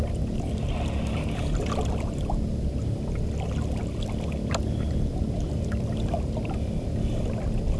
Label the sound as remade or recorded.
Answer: recorded